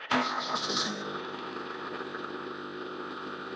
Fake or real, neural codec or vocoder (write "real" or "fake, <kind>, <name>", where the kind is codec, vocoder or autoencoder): fake, codec, ZipCodec